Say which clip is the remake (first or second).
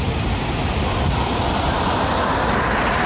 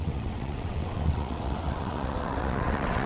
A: second